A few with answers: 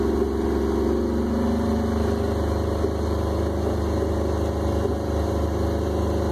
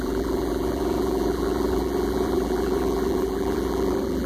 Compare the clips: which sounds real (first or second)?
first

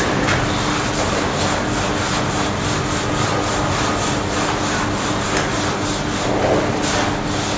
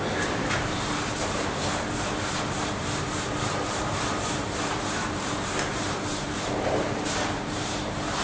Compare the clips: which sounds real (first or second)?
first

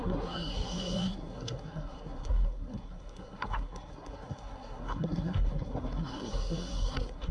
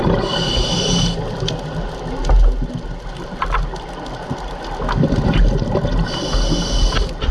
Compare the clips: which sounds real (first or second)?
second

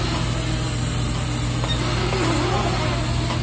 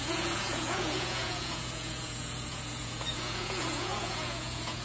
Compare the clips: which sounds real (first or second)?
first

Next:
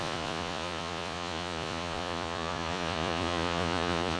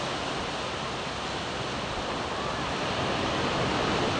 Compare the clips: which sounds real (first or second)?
second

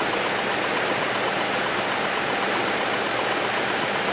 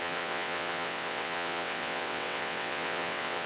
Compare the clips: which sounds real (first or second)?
first